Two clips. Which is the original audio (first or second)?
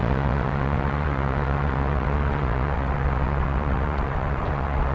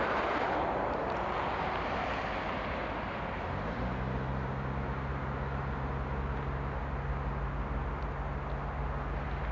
second